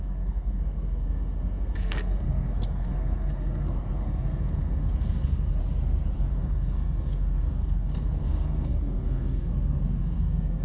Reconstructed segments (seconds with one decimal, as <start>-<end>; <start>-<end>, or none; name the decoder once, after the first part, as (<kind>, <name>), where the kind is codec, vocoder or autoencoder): 0.0-5.6 (codec, SNAC); 6.3-10.6